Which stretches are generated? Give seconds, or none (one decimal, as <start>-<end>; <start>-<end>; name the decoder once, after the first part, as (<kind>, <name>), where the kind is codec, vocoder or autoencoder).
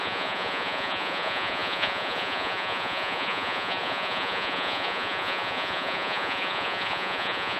0.0-7.6 (vocoder, Vocos)